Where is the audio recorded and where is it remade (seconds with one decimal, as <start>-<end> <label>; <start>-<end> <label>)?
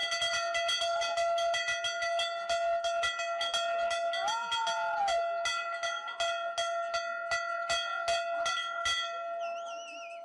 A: 0.0-10.2 recorded